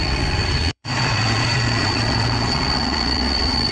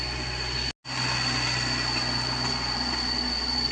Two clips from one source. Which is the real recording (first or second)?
second